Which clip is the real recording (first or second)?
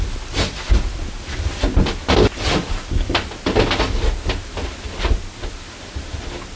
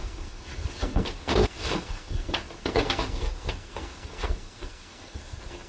first